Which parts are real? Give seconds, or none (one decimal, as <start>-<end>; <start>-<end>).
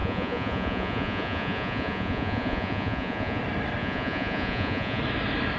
3.4-3.8; 5.0-5.6